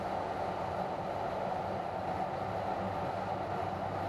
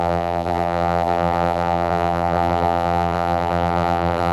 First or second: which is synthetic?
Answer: second